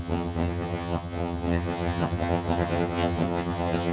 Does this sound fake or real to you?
fake